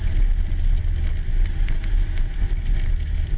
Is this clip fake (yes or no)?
no